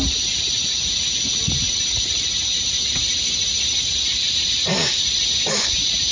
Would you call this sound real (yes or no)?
yes